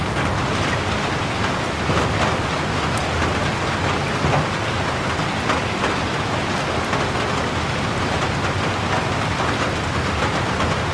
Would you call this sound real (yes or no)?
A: yes